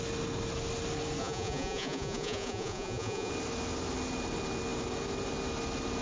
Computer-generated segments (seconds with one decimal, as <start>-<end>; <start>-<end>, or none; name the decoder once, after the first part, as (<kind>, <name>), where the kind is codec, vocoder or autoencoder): 1.2-3.3 (vocoder, Vocos)